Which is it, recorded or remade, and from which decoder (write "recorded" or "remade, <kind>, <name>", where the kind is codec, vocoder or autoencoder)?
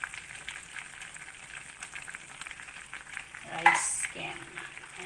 recorded